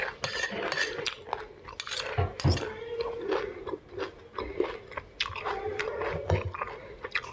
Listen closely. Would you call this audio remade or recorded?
recorded